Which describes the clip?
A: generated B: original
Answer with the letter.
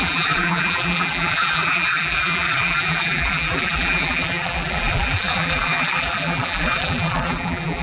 A